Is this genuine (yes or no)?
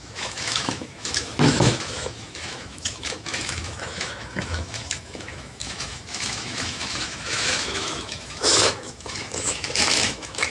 no